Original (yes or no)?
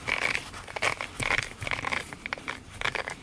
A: yes